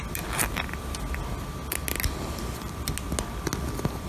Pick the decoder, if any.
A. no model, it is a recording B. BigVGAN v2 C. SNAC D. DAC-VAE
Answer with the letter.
A